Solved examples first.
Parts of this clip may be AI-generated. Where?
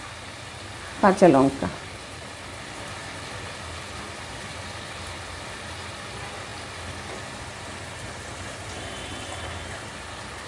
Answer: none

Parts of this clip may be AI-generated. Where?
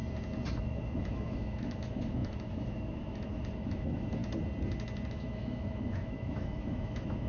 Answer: 0.6-4.2 (autoencoder, DAC-VAE); 5.1-7.3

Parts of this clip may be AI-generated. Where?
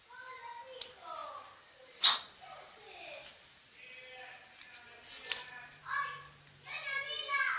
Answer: none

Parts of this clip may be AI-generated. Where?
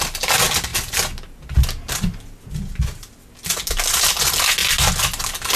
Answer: none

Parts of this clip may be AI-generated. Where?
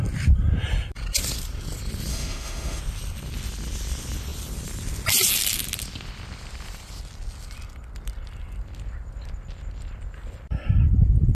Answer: 2.1-2.8 (autoencoder, DAC-VAE)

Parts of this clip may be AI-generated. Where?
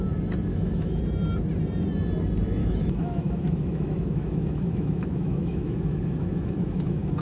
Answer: 0.5-1.0 (autoencoder, DAC-VAE); 2.6-7.2